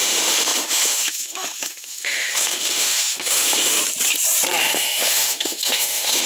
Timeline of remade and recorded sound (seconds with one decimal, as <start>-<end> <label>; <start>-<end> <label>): 0.0-3.7 remade; 3.7-4.6 recorded; 4.6-6.3 remade